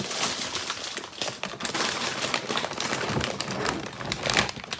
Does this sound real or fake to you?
fake